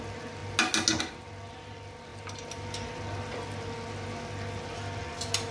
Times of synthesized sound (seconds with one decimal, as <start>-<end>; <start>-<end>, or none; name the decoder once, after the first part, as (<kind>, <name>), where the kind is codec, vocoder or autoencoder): none